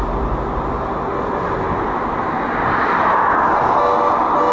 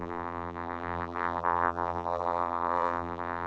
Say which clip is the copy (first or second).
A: second